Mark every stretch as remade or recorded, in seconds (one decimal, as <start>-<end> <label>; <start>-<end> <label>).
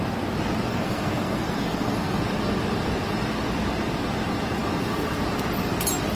0.0-0.7 recorded; 0.7-2.2 remade; 2.2-6.1 recorded